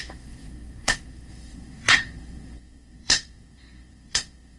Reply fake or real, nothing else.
fake